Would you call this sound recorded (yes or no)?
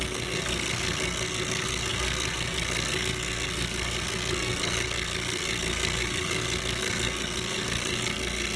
no